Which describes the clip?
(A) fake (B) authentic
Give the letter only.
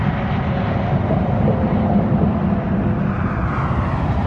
B